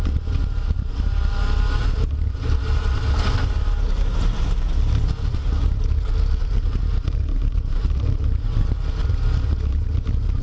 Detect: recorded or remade remade